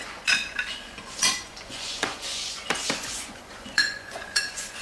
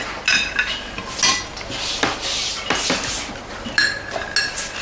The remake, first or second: first